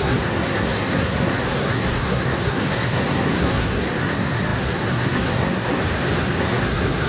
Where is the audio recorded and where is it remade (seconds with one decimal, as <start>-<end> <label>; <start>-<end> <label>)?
0.0-5.8 remade; 5.8-6.4 recorded; 6.4-7.1 remade